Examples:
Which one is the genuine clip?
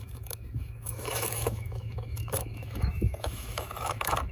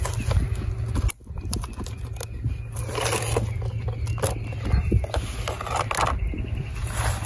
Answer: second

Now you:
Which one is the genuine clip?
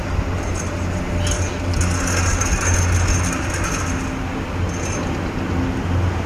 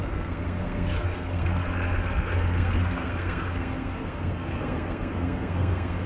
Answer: first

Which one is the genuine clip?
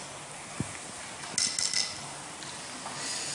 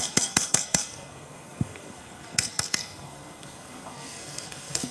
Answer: first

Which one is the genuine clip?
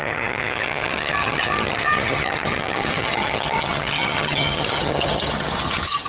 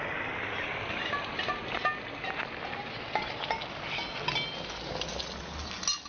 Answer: second